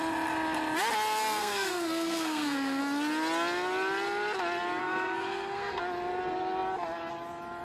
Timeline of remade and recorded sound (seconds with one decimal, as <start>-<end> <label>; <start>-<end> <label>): 0.0-1.4 recorded; 1.4-2.8 remade; 2.8-4.8 recorded; 4.8-5.8 remade; 5.8-7.6 recorded